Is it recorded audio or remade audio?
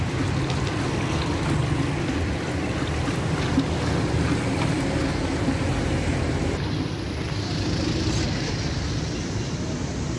recorded